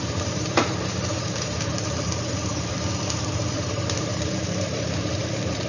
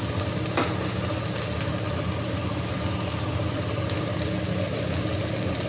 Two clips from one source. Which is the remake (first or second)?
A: first